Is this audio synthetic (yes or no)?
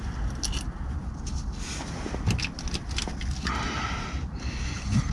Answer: no